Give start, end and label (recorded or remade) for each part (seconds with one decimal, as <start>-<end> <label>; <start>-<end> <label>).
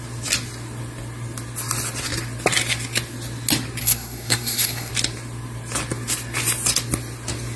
0.0-3.8 recorded; 3.8-4.9 remade; 4.9-7.6 recorded